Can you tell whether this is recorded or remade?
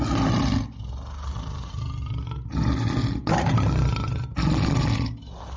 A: recorded